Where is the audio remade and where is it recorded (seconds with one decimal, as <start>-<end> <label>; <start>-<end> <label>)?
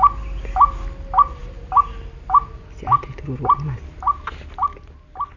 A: 0.0-5.4 recorded